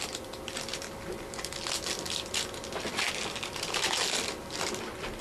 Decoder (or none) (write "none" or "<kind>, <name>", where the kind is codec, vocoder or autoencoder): none